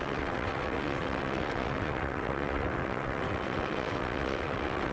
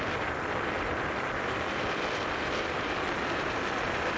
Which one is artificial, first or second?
first